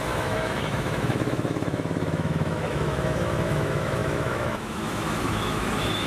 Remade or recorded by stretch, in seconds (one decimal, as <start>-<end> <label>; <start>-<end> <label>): 0.0-6.1 remade